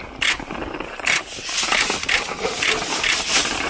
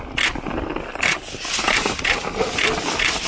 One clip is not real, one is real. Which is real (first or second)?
second